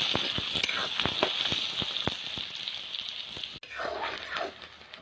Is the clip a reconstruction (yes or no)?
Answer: no